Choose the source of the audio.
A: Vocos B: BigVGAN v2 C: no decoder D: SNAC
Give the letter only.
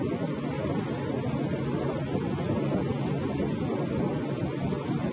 C